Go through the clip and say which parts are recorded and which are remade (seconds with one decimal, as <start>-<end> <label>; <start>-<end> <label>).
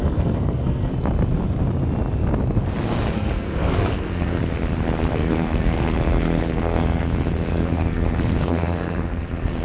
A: 0.0-0.9 remade; 0.9-3.1 recorded; 3.1-4.4 remade; 4.4-5.1 recorded; 5.1-9.6 remade